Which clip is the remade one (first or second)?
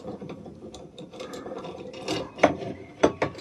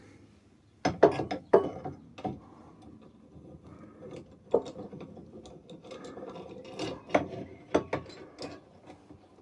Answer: first